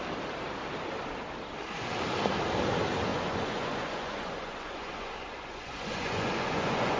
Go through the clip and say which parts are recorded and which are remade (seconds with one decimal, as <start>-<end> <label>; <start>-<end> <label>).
0.0-3.1 recorded; 3.1-7.0 remade

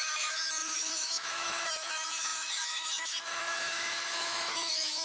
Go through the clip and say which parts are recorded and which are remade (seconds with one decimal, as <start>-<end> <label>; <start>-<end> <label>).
0.0-5.0 remade

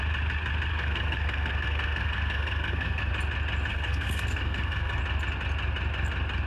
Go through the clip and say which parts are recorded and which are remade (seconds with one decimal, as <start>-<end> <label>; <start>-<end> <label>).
0.0-0.7 recorded; 0.7-3.1 remade; 3.1-3.7 recorded; 3.7-5.0 remade; 5.0-6.5 recorded

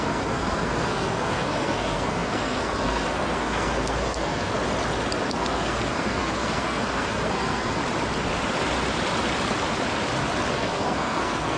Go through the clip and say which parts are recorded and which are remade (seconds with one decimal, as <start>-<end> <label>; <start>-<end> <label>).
0.0-4.5 remade; 4.5-5.3 recorded; 5.3-7.8 remade; 7.8-10.5 recorded; 10.5-11.6 remade

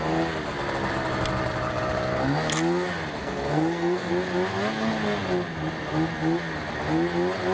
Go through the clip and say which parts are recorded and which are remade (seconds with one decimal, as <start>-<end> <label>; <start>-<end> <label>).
0.0-3.2 recorded; 3.2-4.1 remade; 4.1-7.5 recorded

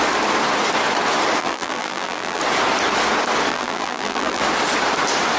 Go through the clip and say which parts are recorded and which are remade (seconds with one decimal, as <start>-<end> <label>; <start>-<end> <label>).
0.0-1.4 recorded; 1.4-2.4 remade; 2.4-3.5 recorded; 3.5-4.4 remade; 4.4-5.4 recorded

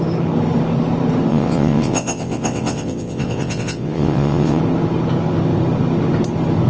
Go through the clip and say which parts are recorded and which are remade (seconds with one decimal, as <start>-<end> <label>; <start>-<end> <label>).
0.0-1.3 recorded; 1.3-4.6 remade; 4.6-6.7 recorded